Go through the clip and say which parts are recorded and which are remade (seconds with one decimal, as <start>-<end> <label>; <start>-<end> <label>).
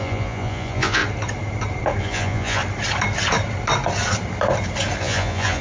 0.0-1.0 remade; 1.0-2.0 recorded; 2.0-2.6 remade; 2.6-5.0 recorded; 5.0-5.6 remade